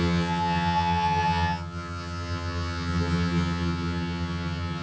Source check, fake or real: fake